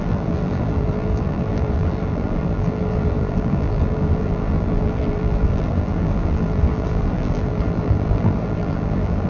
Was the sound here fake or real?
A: fake